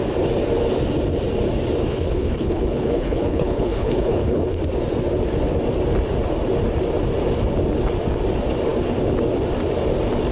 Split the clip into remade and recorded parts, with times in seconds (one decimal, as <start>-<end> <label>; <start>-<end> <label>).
0.0-1.9 recorded; 1.9-4.6 remade; 4.6-10.3 recorded